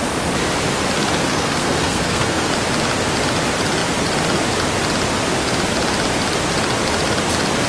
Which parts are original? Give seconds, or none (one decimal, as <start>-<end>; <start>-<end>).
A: 0.0-1.3; 2.5-7.7